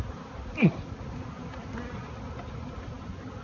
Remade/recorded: recorded